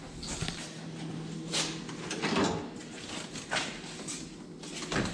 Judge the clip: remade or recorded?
recorded